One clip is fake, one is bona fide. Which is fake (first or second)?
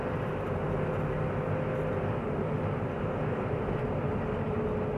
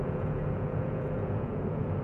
second